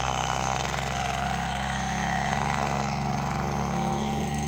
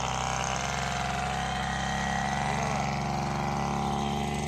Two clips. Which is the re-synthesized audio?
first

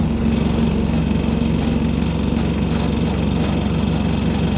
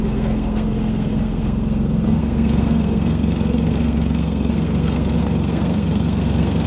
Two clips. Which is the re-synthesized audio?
second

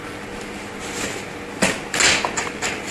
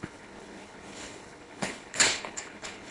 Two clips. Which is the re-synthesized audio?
second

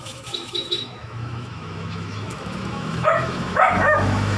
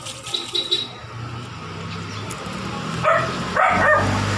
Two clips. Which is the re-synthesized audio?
first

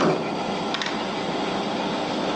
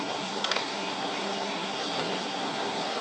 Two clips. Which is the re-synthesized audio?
second